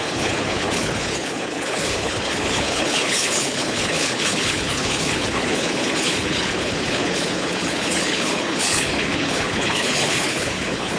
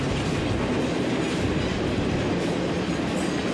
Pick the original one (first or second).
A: second